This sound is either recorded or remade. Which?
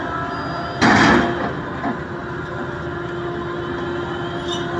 recorded